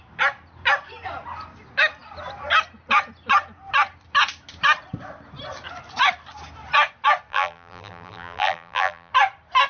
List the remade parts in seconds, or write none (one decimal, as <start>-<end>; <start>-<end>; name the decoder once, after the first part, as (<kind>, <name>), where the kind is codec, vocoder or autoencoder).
7.3-9.1 (vocoder, BigVGAN v2)